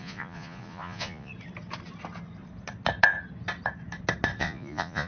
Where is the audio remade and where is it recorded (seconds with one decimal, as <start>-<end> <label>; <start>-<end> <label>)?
0.0-1.3 remade; 1.3-4.4 recorded; 4.4-5.1 remade